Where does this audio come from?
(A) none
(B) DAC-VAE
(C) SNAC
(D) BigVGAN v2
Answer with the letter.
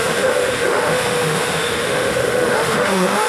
B